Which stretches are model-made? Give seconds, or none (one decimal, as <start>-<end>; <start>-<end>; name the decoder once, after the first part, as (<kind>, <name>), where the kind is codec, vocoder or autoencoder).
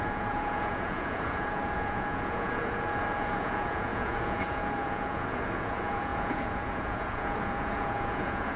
0.0-8.6 (vocoder, Vocos)